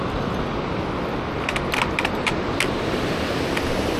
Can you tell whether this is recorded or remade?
recorded